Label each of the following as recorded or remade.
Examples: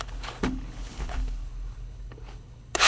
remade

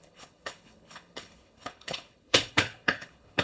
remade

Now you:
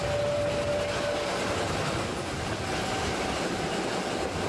recorded